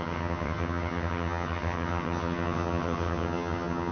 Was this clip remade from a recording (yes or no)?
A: yes